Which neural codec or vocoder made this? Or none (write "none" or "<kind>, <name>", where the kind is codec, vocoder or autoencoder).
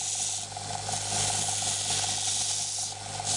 none